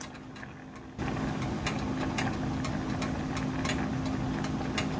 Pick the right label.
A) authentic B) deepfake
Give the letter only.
A